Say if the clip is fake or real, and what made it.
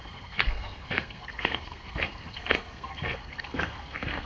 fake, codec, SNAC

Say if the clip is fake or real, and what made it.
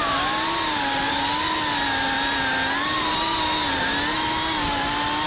real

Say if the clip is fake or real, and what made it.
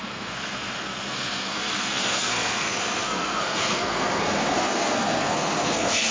fake, codec, SNAC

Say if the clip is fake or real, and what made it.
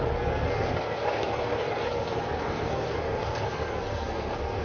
fake, codec, SNAC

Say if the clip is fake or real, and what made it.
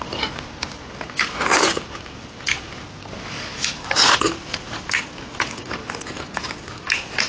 real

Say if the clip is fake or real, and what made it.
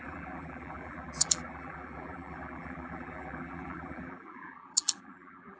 fake, vocoder, BigVGAN v2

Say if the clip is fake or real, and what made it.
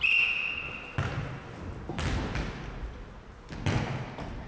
real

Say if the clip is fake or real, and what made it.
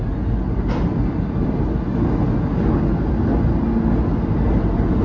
real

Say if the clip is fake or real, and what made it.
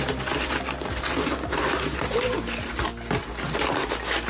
real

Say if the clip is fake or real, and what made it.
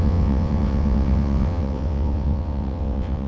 fake, vocoder, WaveNeXt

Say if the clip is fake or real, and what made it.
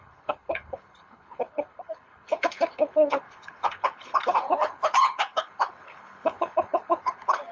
fake, codec, HILCodec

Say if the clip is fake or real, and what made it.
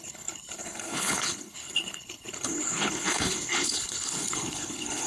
fake, codec, HILCodec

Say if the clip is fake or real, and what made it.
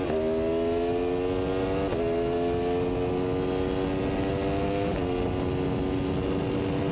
real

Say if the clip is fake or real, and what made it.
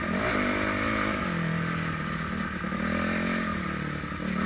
real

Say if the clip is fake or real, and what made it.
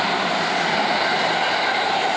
real